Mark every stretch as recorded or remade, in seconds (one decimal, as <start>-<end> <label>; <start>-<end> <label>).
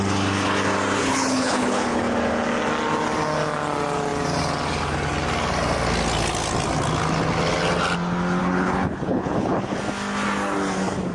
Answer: 0.0-1.0 recorded; 1.0-2.0 remade; 2.0-8.4 recorded; 8.4-9.8 remade; 9.8-11.1 recorded